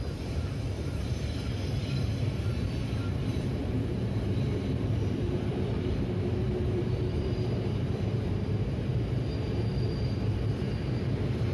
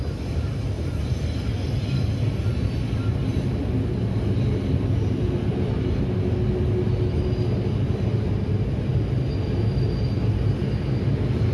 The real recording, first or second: second